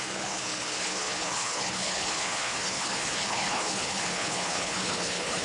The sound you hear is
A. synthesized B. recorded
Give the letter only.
A